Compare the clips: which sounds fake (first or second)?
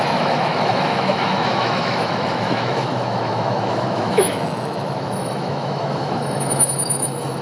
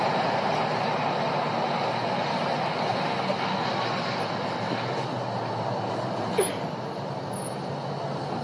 first